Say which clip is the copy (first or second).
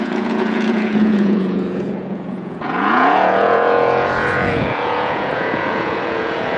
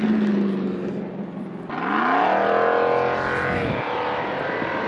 first